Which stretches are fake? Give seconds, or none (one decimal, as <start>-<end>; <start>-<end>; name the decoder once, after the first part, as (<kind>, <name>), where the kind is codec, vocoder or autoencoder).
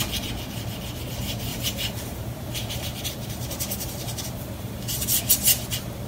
1.5-5.2 (vocoder, BigVGAN v2)